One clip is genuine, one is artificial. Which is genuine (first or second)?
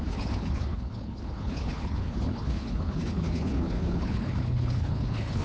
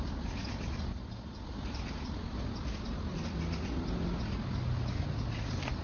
second